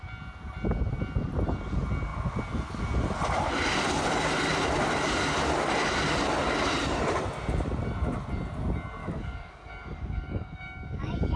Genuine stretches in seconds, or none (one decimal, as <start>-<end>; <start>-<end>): 0.0-9.0